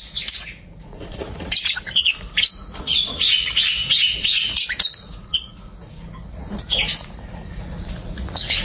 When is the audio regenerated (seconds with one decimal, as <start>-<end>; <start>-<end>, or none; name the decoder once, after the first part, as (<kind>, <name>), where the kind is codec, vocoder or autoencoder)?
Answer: 0.0-8.6 (vocoder, Vocos)